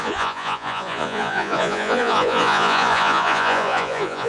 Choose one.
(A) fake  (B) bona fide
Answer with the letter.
A